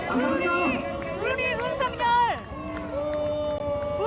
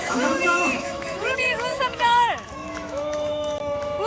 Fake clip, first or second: second